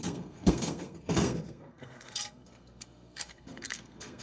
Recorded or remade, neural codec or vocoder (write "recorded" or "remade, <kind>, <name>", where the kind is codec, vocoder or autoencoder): remade, codec, SNAC